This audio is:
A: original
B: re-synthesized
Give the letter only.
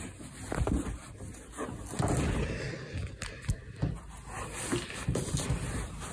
A